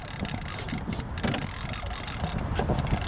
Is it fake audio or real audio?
real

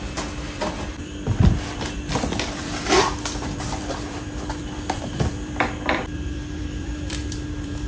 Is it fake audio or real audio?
fake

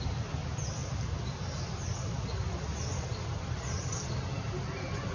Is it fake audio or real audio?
real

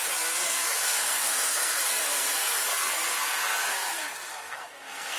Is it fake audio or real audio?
fake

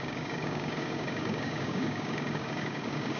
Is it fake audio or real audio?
fake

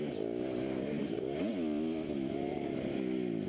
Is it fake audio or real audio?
real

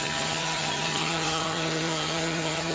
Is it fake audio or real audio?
fake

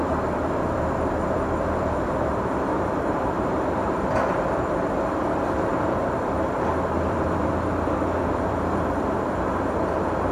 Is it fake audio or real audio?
fake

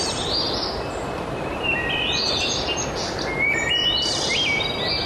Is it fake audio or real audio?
real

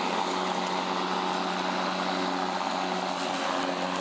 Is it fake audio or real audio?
real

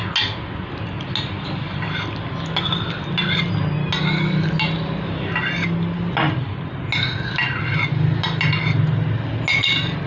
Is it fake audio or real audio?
real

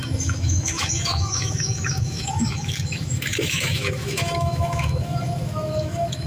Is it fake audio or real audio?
fake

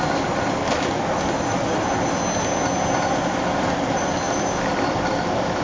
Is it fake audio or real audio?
real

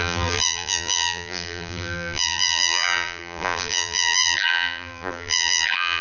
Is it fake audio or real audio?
fake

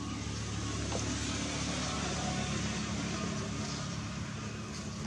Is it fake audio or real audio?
real